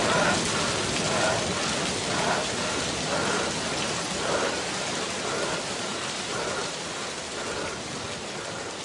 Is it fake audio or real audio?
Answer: real